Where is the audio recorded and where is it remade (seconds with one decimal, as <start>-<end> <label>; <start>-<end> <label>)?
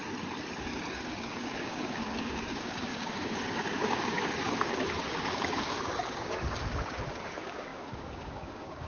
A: 0.0-0.9 recorded; 0.9-8.9 remade